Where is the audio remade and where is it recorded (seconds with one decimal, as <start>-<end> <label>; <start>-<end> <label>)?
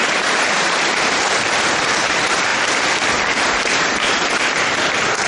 0.0-2.5 remade; 2.5-3.4 recorded; 3.4-5.3 remade